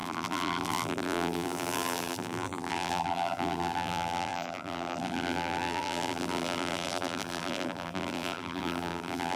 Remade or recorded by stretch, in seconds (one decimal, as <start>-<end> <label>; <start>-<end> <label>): 0.0-9.4 remade